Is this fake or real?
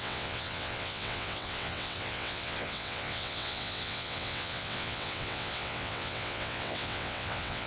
fake